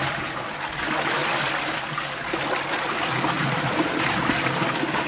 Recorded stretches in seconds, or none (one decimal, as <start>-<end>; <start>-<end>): 0.0-5.1